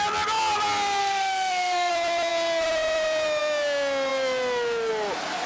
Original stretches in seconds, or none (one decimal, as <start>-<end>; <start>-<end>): 0.0-1.0; 1.9-5.5